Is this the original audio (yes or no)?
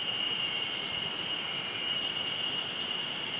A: no